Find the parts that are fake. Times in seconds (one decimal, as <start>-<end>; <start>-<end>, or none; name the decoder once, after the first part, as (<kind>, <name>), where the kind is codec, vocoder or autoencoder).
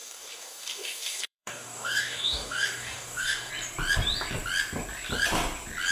0.0-3.5 (codec, DAC)